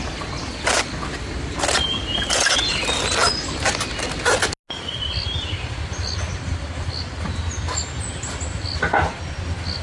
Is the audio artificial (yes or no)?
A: no